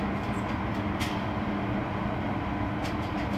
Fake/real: real